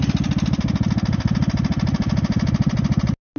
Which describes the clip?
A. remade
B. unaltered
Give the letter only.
B